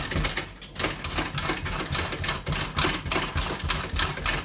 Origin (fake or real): real